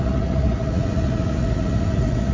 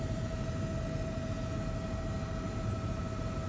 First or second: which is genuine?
second